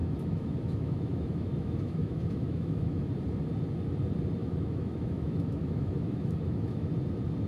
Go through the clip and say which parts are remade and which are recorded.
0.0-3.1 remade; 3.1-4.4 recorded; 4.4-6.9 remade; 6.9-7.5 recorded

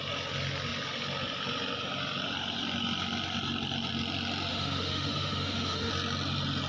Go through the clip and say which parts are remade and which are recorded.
0.0-4.5 recorded; 4.5-5.9 remade; 5.9-6.7 recorded

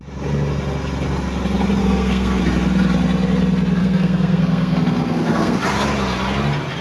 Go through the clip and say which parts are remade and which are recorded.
0.0-1.8 recorded; 1.8-2.4 remade; 2.4-3.8 recorded; 3.8-5.6 remade; 5.6-6.8 recorded

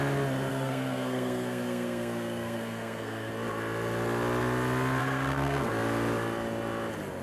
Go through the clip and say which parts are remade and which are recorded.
0.0-0.5 recorded; 0.5-3.3 remade; 3.3-5.0 recorded; 5.0-5.7 remade; 5.7-7.2 recorded